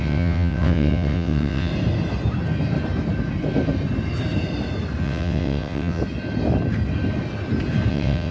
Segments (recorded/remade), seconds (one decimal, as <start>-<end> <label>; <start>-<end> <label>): 0.0-1.7 remade; 1.7-5.0 recorded; 5.0-6.0 remade; 6.0-7.9 recorded; 7.9-8.3 remade